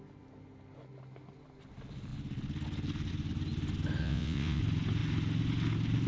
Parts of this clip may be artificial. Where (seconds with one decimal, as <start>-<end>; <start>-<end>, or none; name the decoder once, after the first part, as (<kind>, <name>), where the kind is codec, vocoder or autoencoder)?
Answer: 4.0-4.6 (vocoder, WaveNeXt)